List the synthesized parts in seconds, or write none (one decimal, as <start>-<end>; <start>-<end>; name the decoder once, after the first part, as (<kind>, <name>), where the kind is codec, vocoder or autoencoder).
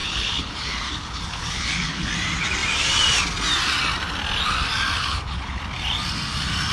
0.0-2.1 (codec, HILCodec); 5.0-5.6